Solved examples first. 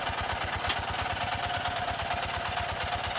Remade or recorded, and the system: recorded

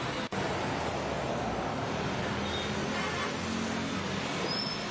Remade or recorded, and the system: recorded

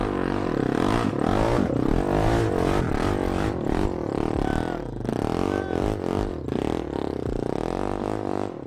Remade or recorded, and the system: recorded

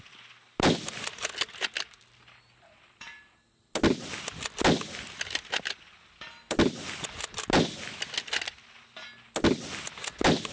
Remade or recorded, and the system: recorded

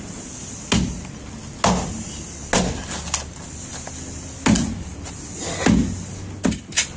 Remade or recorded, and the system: recorded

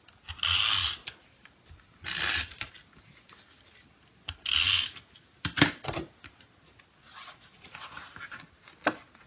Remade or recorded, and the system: recorded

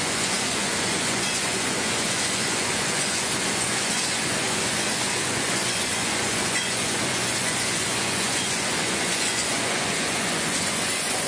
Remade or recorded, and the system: remade, vocoder, Vocos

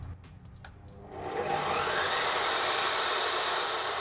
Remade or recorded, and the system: recorded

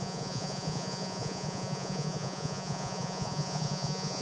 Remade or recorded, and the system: remade, vocoder, Vocos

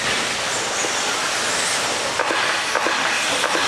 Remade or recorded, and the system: recorded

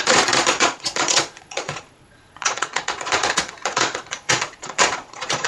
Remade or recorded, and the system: remade, vocoder, Vocos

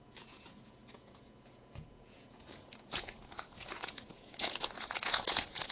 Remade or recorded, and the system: remade, vocoder, Vocos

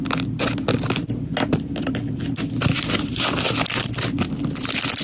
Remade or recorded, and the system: recorded